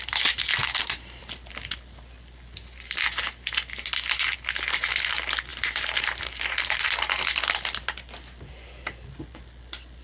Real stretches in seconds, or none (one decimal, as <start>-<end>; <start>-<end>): 0.0-10.0